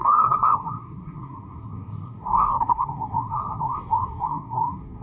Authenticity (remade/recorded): remade